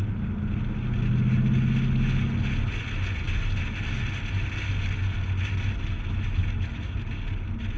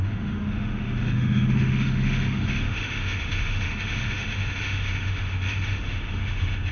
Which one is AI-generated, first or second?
second